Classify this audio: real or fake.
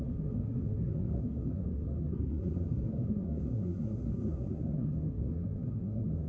fake